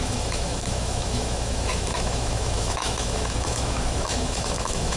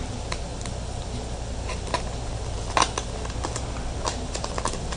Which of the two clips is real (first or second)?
second